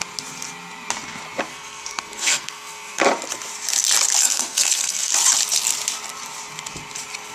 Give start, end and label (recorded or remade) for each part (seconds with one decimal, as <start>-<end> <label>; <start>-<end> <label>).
0.0-1.5 recorded; 1.5-3.0 remade; 3.0-4.2 recorded; 4.2-5.1 remade; 5.1-7.3 recorded